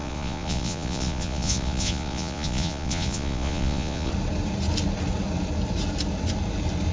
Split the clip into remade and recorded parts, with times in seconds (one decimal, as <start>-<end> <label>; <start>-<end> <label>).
0.0-4.1 remade; 4.1-6.9 recorded